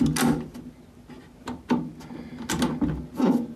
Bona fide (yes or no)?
yes